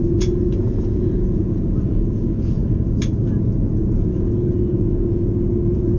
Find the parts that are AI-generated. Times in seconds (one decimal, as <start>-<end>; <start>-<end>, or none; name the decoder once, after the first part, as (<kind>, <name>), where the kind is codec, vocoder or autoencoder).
0.0-2.6 (vocoder, Vocos); 3.4-6.0